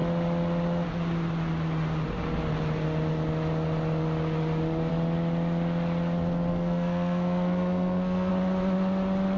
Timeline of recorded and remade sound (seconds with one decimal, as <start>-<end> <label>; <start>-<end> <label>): 0.0-6.5 recorded; 6.5-8.3 remade; 8.3-9.4 recorded